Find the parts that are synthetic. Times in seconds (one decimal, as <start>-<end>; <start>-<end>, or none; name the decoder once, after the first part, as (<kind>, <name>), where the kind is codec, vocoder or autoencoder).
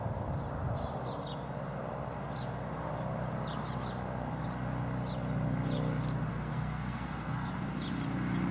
6.3-7.5 (codec, SNAC)